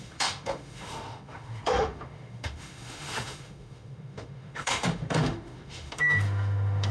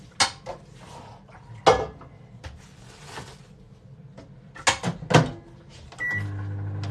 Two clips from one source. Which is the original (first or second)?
second